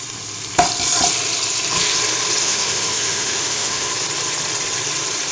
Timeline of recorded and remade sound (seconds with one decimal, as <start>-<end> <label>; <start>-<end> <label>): 0.0-2.4 recorded; 2.4-3.9 remade; 3.9-5.3 recorded